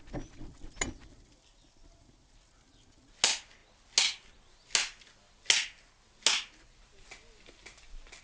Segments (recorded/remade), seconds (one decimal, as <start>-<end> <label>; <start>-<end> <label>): 0.0-8.2 recorded